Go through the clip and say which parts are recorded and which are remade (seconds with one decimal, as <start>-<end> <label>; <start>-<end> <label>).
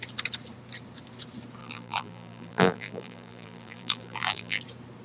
0.0-1.6 recorded; 1.6-4.6 remade; 4.6-5.0 recorded